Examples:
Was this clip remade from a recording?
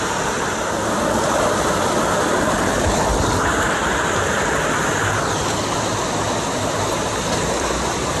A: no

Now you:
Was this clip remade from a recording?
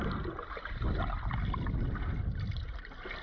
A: no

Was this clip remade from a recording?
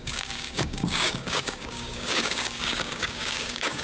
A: yes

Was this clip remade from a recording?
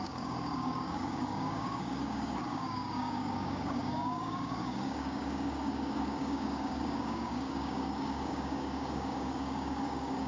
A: yes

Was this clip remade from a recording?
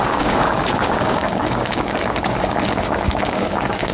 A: yes